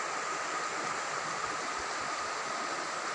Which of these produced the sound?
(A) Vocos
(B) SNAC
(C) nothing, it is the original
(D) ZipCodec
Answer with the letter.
C